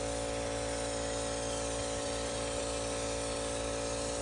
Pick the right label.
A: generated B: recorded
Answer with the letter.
B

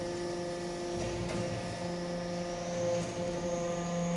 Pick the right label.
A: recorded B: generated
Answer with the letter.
A